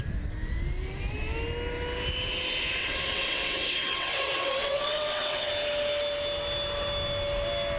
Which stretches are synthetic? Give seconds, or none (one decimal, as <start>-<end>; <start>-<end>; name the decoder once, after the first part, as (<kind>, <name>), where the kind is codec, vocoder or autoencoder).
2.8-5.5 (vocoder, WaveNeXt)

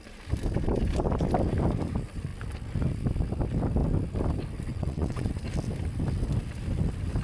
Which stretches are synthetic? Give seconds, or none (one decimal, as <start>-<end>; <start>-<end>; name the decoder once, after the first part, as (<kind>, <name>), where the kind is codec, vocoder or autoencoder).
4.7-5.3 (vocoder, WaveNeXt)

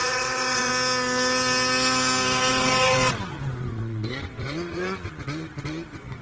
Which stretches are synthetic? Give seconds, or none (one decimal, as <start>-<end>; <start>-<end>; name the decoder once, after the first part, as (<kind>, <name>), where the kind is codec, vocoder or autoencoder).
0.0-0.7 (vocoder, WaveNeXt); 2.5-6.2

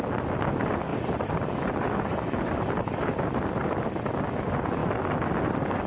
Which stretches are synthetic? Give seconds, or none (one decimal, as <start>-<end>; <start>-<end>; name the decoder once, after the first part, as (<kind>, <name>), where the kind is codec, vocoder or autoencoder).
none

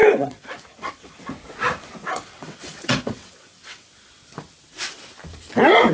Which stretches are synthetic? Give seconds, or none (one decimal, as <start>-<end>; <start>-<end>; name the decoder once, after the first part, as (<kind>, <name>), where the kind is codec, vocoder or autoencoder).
0.0-1.3 (vocoder, WaveNeXt); 2.0-3.9